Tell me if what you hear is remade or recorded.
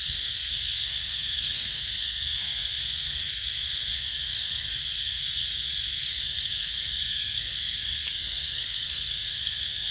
remade